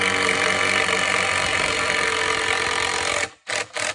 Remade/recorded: recorded